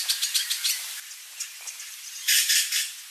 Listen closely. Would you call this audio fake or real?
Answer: real